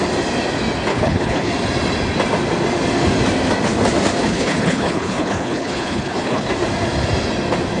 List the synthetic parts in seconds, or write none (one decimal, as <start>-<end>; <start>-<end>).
0.9-1.5; 4.2-6.5